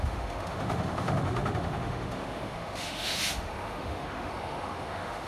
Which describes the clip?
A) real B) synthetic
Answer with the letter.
B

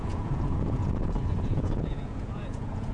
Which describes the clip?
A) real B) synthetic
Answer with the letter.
B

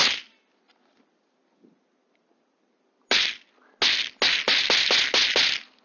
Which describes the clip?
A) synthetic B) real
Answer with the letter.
B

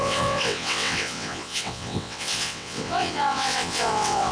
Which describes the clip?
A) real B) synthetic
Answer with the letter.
B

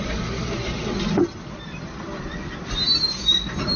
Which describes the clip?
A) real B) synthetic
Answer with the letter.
A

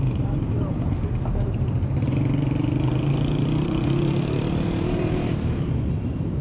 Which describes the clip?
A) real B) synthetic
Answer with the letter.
B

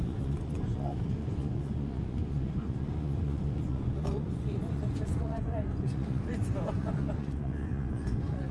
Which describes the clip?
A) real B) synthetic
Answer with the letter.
B